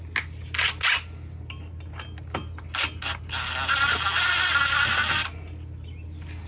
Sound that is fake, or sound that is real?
real